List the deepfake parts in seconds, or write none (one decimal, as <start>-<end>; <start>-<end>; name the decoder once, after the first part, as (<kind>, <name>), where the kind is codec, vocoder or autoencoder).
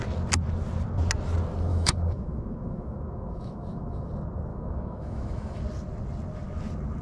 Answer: 1.7-4.1 (autoencoder, DAC-VAE); 4.5-5.6